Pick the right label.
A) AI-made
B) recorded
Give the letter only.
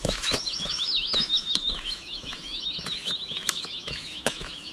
A